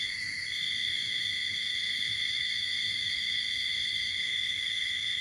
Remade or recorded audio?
remade